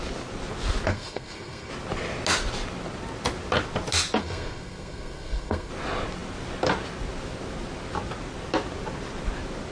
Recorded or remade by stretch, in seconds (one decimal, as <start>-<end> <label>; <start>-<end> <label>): 0.0-0.9 recorded; 0.9-1.7 remade; 1.7-4.2 recorded; 4.2-5.7 remade; 5.7-9.7 recorded